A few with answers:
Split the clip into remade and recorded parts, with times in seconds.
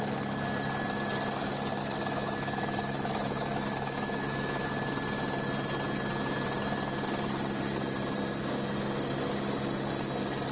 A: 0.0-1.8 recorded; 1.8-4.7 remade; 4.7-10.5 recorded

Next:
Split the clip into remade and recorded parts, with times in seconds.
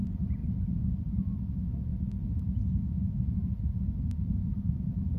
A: 0.0-5.2 recorded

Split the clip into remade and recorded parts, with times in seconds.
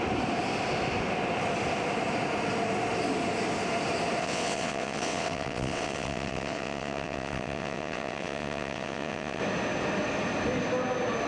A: 0.0-4.2 recorded; 4.2-9.4 remade; 9.4-11.3 recorded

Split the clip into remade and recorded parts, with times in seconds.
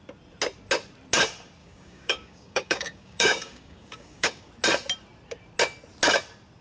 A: 0.0-1.6 recorded; 1.6-4.5 remade; 4.5-6.6 recorded